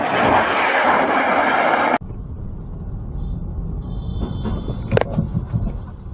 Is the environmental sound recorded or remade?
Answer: recorded